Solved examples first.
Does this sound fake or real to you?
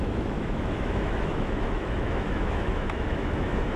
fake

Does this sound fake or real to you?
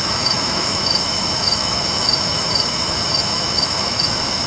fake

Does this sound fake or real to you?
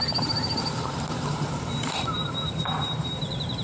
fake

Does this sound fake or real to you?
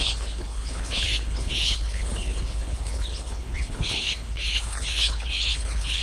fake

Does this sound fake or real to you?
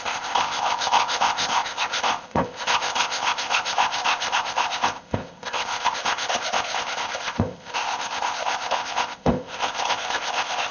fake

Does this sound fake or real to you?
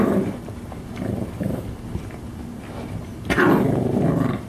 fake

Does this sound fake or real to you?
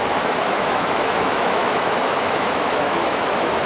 fake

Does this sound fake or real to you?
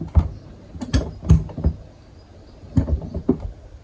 real